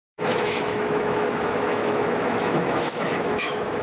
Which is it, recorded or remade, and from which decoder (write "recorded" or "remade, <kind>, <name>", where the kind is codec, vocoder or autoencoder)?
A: remade, autoencoder, DAC-VAE